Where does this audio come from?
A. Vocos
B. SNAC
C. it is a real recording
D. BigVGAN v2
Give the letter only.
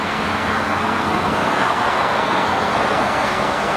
B